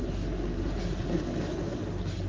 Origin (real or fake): real